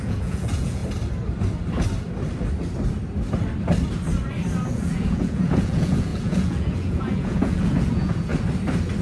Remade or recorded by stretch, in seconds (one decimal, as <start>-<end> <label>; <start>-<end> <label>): 0.0-0.8 remade; 0.8-4.7 recorded; 4.7-8.3 remade; 8.3-9.0 recorded